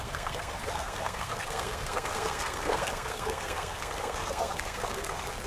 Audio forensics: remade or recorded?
remade